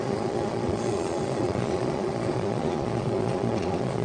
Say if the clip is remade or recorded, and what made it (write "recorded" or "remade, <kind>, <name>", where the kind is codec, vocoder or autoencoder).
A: remade, vocoder, Vocos